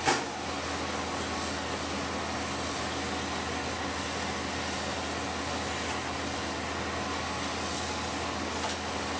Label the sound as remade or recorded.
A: recorded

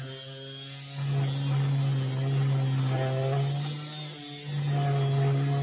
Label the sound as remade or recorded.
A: recorded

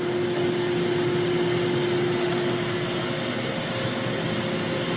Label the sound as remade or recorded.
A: recorded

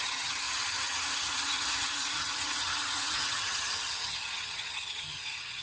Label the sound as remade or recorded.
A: remade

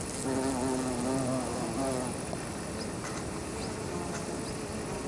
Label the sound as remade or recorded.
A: recorded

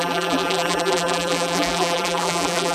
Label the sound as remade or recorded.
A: remade